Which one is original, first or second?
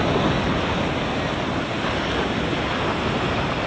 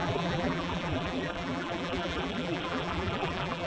first